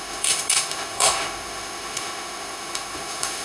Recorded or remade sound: remade